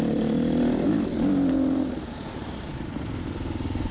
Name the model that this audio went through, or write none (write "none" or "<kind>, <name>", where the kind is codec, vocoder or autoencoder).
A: none